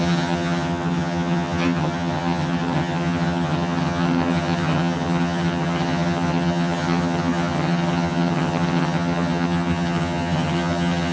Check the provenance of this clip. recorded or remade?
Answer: remade